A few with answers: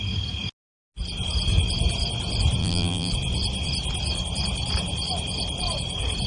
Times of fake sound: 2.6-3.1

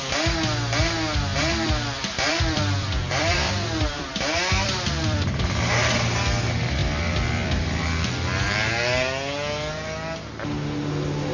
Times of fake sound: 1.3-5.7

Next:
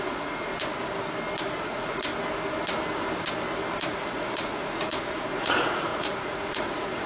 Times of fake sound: 0.0-0.5; 1.4-2.1; 3.8-7.1